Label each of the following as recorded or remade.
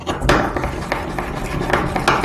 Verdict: recorded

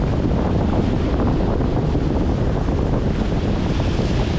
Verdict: recorded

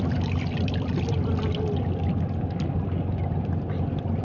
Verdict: recorded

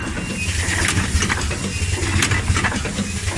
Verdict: recorded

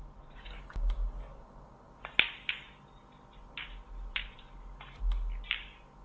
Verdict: recorded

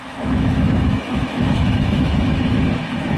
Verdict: remade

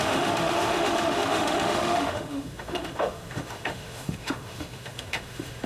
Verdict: remade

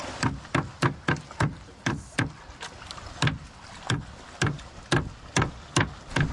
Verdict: recorded